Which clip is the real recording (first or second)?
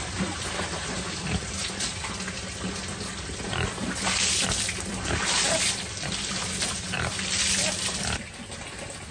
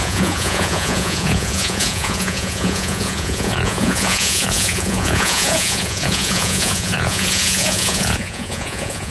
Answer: first